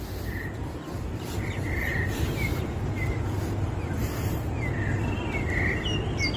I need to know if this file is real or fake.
real